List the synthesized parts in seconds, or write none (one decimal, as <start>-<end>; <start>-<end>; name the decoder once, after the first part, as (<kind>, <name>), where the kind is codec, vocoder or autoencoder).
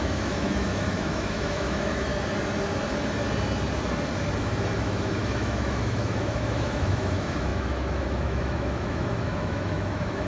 0.0-2.1 (autoencoder, DAC-VAE); 4.8-10.3